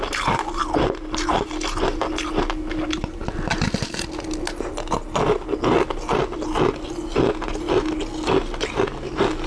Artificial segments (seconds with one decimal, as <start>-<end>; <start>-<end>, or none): none